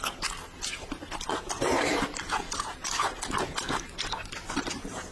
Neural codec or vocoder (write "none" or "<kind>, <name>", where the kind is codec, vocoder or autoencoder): none